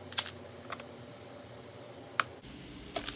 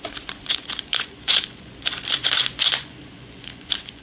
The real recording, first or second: first